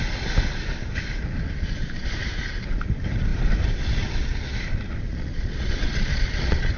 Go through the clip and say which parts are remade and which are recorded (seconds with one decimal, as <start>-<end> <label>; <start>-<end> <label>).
0.0-5.1 recorded; 5.1-6.8 remade